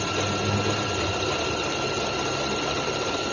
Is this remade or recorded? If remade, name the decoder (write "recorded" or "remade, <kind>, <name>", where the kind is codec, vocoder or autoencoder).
recorded